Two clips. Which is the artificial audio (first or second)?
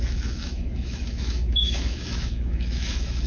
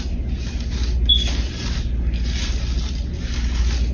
first